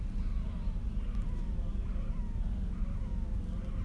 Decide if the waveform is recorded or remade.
recorded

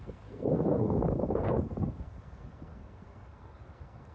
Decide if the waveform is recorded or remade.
remade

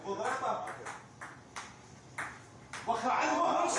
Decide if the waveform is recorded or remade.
recorded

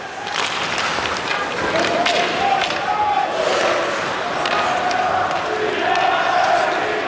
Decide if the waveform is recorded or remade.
recorded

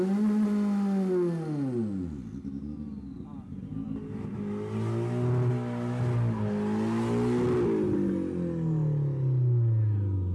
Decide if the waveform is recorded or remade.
recorded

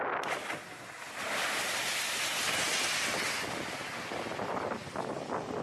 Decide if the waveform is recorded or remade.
recorded